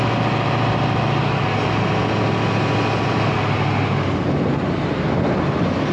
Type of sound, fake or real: real